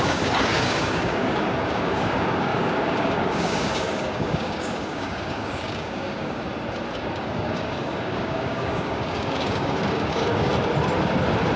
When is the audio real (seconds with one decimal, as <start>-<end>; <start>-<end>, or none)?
6.4-7.0; 10.5-11.6